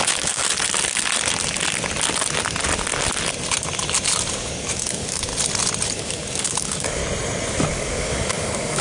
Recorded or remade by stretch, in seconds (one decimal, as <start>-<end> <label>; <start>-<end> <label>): 0.0-0.4 remade; 0.4-4.3 recorded; 4.3-5.3 remade; 5.3-5.9 recorded; 5.9-7.0 remade; 7.0-7.7 recorded; 7.7-8.8 remade